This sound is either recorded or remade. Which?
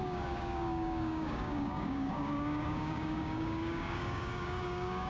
remade